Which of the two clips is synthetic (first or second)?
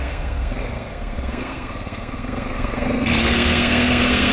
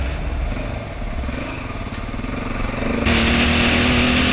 first